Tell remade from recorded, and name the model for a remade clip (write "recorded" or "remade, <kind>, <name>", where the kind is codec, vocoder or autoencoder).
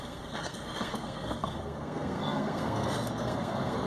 remade, codec, SNAC